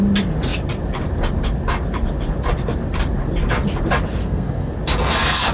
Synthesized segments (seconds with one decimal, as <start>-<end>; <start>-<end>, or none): 4.2-4.7